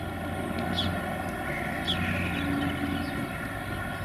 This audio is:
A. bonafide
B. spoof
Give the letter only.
A